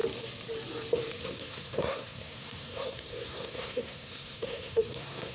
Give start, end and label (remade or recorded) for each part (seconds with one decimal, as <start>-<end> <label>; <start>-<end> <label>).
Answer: 0.0-1.2 recorded; 1.2-5.3 remade